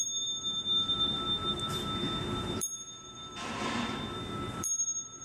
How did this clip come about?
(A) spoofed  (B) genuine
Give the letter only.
A